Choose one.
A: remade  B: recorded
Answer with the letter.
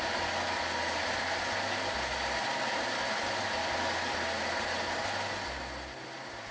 B